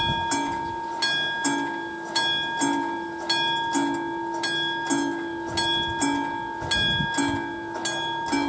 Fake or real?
real